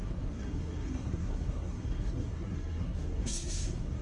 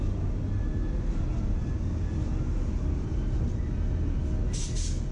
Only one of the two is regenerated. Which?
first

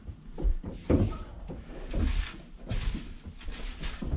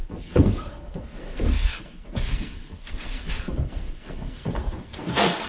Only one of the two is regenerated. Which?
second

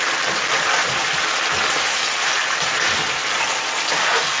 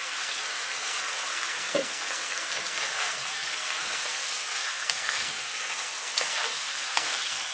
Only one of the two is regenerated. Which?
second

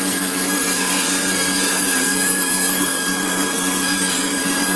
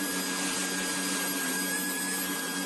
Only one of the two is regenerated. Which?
first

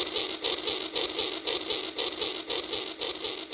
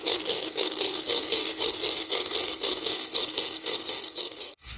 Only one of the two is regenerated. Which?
second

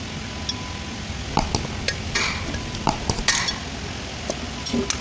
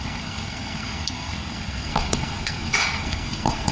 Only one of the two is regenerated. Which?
second